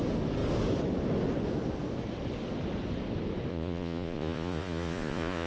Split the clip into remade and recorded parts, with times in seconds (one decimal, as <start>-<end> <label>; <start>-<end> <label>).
0.0-3.5 recorded; 3.5-5.5 remade